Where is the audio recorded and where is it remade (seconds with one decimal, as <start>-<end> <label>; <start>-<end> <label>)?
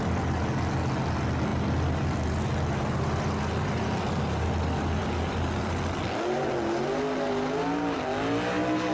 0.0-8.9 recorded